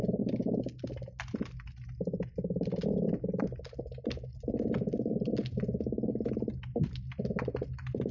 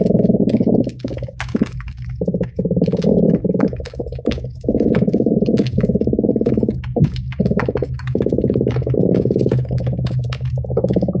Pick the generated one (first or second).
second